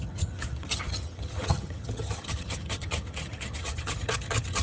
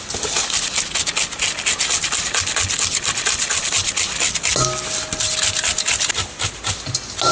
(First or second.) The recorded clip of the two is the second